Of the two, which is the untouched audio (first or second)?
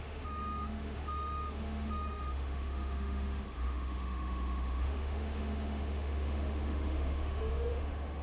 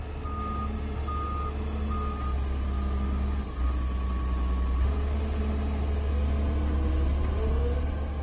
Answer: second